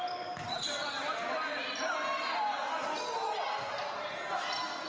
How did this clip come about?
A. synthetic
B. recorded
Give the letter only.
B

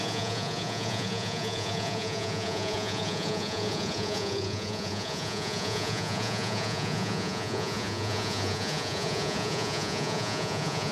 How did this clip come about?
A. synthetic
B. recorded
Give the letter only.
A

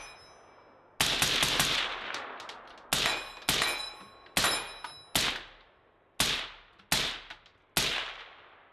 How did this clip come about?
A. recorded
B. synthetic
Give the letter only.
A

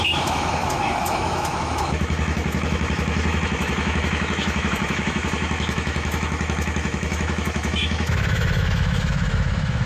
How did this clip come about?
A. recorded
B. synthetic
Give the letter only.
B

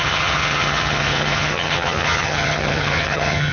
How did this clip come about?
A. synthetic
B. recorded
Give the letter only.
A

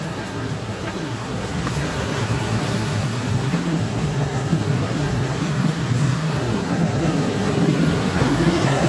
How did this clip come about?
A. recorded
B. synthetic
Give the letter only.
B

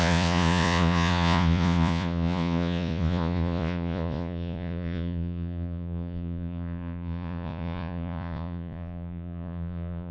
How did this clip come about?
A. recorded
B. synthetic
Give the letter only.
B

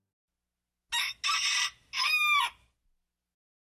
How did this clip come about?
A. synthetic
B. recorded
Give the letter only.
B